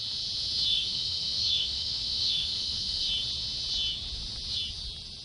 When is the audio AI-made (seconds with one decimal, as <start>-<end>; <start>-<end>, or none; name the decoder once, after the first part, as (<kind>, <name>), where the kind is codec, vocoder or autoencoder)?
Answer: 0.7-3.1 (autoencoder, DAC-VAE)